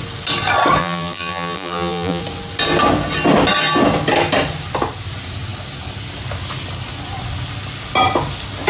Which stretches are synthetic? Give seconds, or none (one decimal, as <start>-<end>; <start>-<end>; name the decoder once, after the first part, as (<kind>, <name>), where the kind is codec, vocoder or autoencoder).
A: 0.8-2.2 (vocoder, BigVGAN v2)